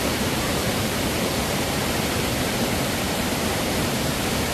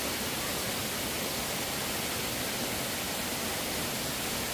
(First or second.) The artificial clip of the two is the first